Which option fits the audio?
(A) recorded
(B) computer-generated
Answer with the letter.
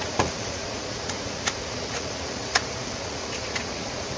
B